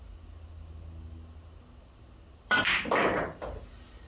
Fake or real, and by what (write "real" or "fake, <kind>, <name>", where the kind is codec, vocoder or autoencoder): real